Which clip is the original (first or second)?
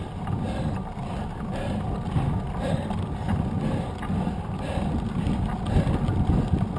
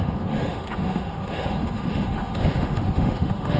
first